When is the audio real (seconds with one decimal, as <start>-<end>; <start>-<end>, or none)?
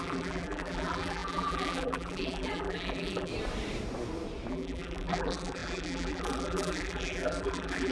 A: 3.3-4.5